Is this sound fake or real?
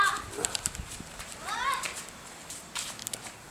real